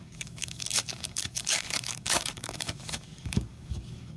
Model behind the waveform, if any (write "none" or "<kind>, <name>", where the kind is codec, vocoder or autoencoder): codec, DAC